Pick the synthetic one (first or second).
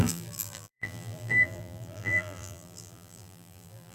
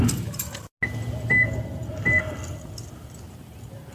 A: first